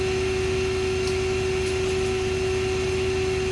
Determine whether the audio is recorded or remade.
recorded